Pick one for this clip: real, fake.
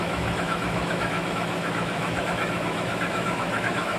fake